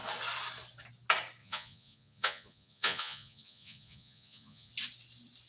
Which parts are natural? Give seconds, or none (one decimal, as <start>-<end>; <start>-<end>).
0.0-1.4; 4.7-5.5